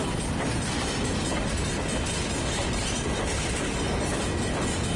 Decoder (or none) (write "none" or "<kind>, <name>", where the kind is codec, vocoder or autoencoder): none